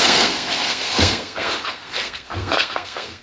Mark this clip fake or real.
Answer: fake